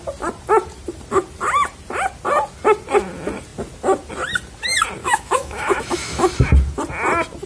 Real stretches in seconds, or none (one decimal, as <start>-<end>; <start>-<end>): 0.0-5.0; 6.3-7.5